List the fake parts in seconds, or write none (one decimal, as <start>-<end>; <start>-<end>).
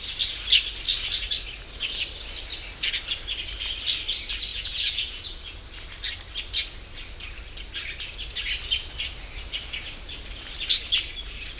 4.5-5.6